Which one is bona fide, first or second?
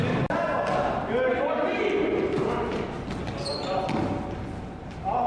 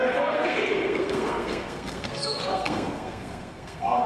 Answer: first